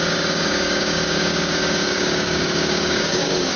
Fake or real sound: fake